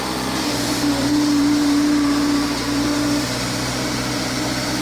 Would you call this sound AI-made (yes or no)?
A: yes